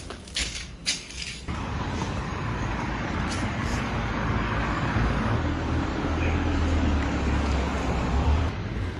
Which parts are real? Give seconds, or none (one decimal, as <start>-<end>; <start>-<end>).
none